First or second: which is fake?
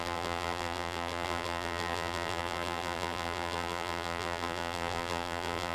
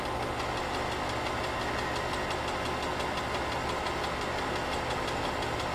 first